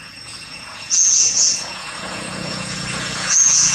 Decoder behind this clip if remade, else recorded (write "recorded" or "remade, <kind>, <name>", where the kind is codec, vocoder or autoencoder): remade, vocoder, Vocos